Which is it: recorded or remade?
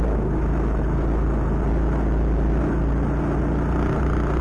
recorded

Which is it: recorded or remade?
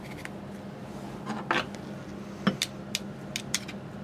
recorded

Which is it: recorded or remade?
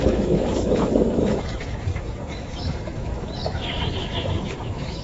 remade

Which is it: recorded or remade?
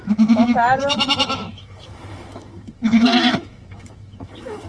remade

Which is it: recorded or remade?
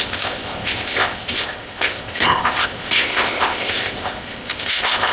remade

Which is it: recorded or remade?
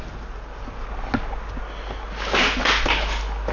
recorded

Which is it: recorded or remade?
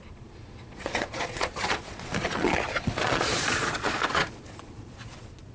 remade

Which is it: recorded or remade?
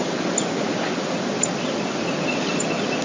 recorded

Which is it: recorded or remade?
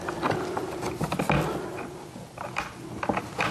recorded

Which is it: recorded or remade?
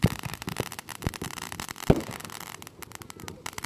recorded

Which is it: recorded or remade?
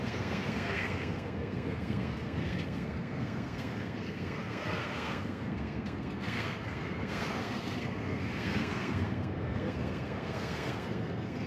remade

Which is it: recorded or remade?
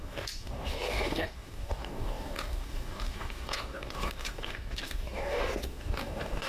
remade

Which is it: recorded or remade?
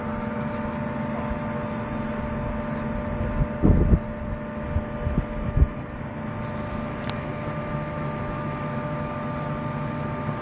recorded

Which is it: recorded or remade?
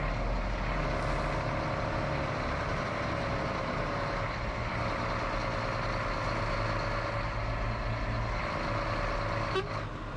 recorded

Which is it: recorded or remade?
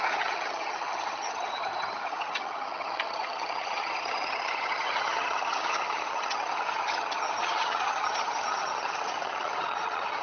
remade